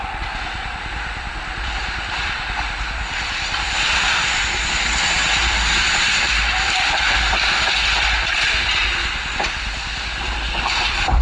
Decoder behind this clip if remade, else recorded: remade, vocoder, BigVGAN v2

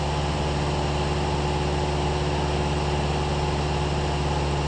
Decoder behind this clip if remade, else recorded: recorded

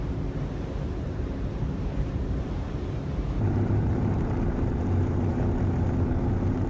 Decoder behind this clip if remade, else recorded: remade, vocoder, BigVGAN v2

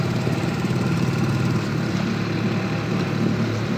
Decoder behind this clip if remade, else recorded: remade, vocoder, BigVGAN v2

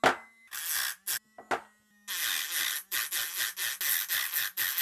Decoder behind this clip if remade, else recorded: recorded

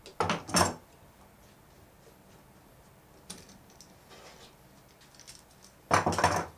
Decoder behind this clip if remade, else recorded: recorded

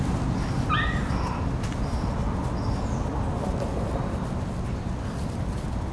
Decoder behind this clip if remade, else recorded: recorded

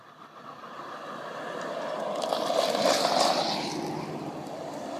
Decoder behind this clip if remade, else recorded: recorded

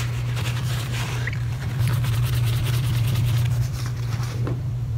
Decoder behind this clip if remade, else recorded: remade, vocoder, BigVGAN v2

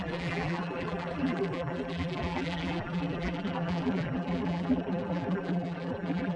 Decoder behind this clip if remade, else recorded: remade, vocoder, BigVGAN v2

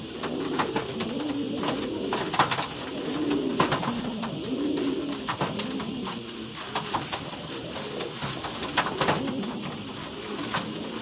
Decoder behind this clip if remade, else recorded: recorded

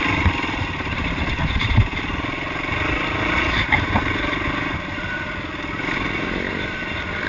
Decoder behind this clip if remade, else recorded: remade, vocoder, BigVGAN v2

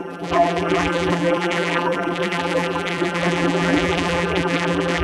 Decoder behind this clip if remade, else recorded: remade, vocoder, BigVGAN v2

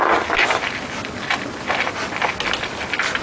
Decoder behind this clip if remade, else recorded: recorded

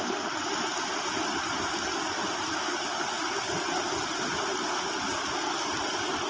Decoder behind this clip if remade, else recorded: recorded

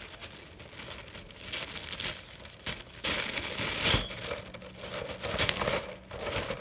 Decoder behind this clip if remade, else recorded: recorded